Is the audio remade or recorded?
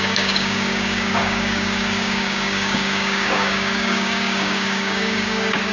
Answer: remade